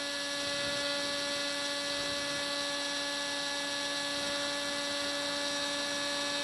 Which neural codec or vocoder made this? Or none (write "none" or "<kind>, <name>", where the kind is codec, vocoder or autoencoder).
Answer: none